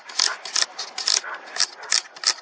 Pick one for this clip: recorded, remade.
recorded